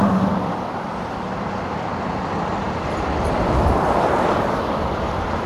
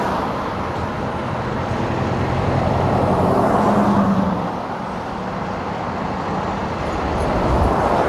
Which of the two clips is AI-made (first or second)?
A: first